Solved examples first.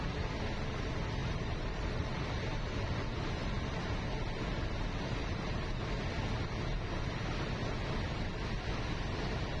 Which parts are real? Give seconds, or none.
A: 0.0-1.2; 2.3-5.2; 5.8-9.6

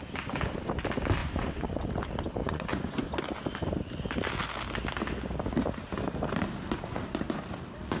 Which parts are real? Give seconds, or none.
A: 0.0-1.2; 1.8-2.4; 3.2-8.0

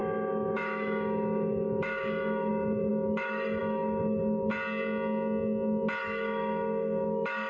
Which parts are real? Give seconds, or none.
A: 4.5-6.0

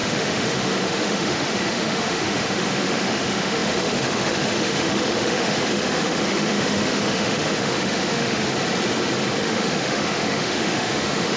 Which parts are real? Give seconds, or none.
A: 8.5-9.4

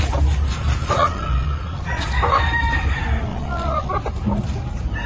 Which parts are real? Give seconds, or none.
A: 0.0-0.8; 2.2-3.3; 3.9-5.1

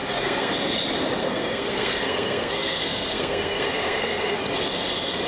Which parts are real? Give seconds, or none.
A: 0.5-1.2; 4.4-5.3

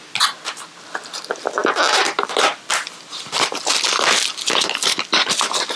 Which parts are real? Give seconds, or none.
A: 0.0-5.8